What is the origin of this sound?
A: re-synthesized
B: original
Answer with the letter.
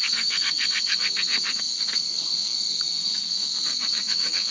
A